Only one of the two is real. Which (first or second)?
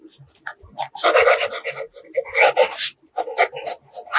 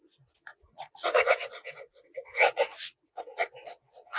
first